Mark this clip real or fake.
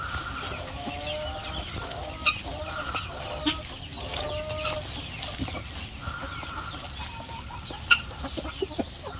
real